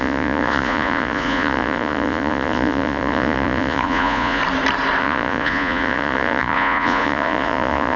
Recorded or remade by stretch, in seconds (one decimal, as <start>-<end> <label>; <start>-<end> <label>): 0.0-4.4 remade; 4.4-5.0 recorded; 5.0-8.0 remade